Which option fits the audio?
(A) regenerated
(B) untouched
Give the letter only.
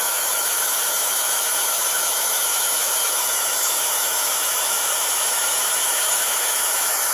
A